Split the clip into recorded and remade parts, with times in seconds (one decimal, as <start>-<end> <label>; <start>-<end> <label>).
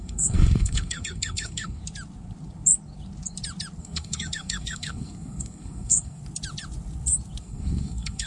0.0-1.8 remade; 1.8-3.8 recorded; 3.8-6.2 remade; 6.2-7.4 recorded; 7.4-8.3 remade